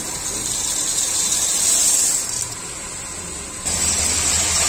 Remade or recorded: recorded